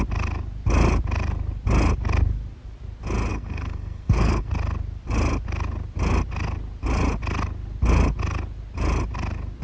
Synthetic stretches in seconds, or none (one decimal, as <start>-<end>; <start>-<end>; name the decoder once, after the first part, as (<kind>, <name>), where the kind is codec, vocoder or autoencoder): 3.3-4.5 (codec, SNAC)